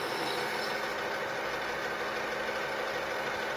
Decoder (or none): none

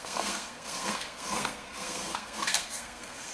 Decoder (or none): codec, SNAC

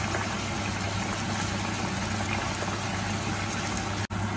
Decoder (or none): none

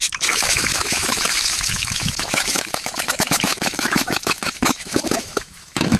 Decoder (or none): autoencoder, DAC-VAE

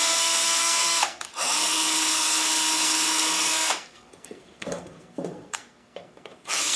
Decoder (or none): codec, SNAC